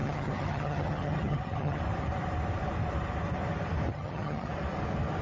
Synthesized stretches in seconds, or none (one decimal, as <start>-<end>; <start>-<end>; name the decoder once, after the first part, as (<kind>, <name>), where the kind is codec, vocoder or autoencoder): 0.0-1.8 (vocoder, HiFi-GAN); 3.9-4.5